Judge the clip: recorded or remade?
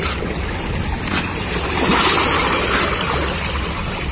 recorded